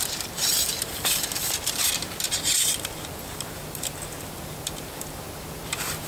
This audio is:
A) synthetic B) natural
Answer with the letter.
A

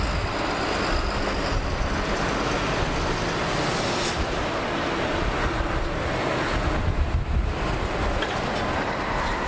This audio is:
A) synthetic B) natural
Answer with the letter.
B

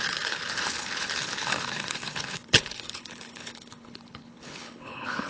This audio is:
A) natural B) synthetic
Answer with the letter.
B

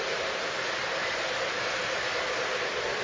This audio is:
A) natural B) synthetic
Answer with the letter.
A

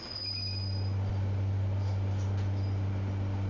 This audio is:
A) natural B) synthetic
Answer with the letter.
A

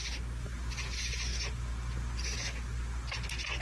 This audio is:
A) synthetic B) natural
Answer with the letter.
B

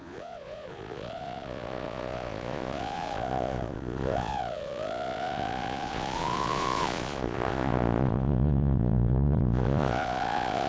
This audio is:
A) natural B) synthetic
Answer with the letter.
B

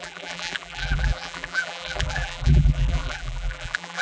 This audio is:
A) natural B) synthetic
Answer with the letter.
B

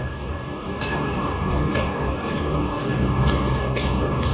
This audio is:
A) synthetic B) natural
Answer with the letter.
A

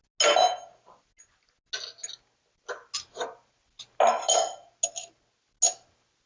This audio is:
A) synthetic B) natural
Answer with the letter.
B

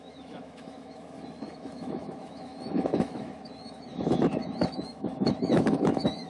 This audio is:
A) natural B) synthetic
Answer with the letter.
B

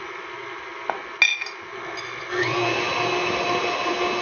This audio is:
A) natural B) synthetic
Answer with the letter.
A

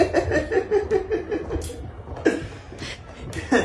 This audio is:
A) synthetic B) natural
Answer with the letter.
B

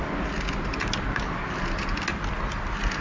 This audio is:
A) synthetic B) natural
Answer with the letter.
B